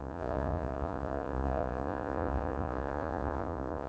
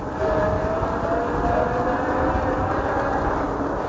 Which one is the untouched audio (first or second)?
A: second